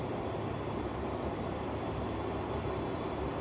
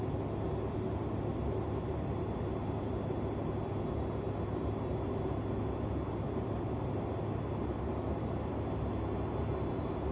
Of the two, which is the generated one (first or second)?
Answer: first